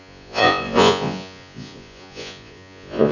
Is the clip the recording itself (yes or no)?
no